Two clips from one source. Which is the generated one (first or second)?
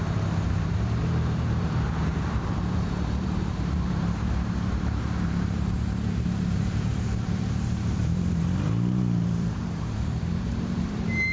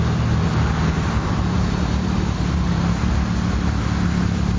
first